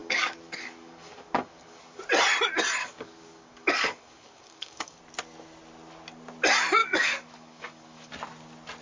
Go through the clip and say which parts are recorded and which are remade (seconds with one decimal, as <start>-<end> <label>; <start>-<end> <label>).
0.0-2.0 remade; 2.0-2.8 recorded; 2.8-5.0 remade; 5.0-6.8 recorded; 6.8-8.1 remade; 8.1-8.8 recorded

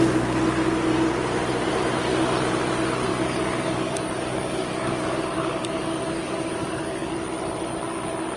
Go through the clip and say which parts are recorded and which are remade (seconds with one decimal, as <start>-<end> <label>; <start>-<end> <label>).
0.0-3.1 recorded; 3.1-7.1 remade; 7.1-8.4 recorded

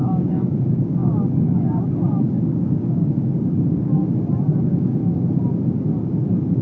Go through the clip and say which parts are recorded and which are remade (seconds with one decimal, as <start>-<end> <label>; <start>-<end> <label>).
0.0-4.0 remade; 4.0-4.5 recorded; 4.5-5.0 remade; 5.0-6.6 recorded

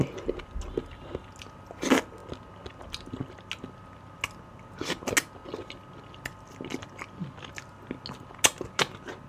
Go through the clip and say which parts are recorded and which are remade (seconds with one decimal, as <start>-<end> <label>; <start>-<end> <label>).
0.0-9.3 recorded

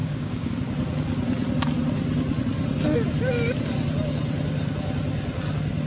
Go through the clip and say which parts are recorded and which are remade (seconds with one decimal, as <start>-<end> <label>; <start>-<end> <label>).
0.0-0.5 remade; 0.5-5.9 recorded